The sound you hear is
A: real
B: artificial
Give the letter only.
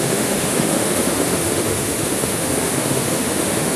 B